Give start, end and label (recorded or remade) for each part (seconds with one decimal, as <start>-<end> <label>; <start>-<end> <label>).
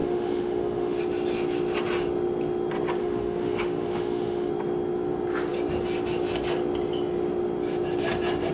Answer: 0.0-1.0 remade; 1.0-3.0 recorded; 3.0-4.5 remade; 4.5-8.5 recorded